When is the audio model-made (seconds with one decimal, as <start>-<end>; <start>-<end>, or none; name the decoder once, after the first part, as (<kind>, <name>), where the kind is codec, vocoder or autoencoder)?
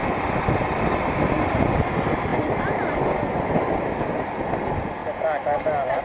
none